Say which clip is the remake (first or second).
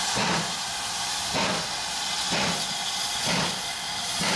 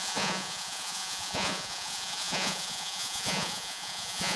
second